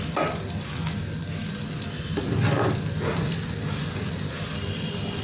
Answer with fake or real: real